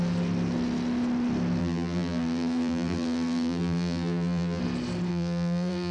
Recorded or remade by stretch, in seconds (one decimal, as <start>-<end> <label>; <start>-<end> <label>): 0.0-1.6 recorded; 1.6-4.6 remade; 4.6-5.1 recorded; 5.1-5.9 remade

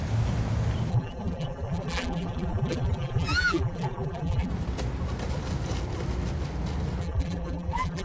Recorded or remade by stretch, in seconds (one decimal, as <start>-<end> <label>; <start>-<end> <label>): 0.0-0.9 recorded; 0.9-4.5 remade; 4.5-7.0 recorded; 7.0-8.0 remade

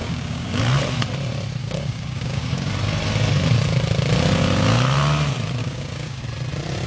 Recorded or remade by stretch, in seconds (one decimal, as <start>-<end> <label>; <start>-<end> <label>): 0.0-0.6 remade; 0.6-1.6 recorded; 1.6-2.7 remade; 2.7-5.6 recorded; 5.6-6.2 remade; 6.2-6.9 recorded

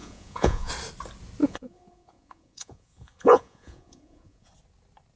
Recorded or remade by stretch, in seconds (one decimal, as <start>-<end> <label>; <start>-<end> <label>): 0.0-0.7 remade; 0.7-1.4 recorded; 1.4-4.5 remade; 4.5-5.2 recorded

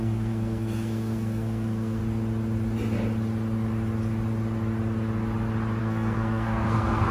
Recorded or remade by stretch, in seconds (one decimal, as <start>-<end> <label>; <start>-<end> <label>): 0.0-2.0 remade; 2.0-5.8 recorded; 5.8-7.1 remade

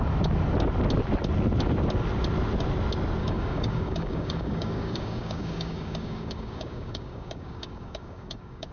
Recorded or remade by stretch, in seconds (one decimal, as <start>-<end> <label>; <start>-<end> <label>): 0.0-3.2 recorded; 3.2-8.7 remade

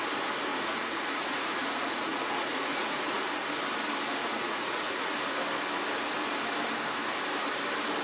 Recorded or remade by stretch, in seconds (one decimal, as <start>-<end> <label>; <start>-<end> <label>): 0.0-0.5 recorded; 0.5-3.2 remade; 3.2-4.2 recorded; 4.2-5.1 remade; 5.1-8.0 recorded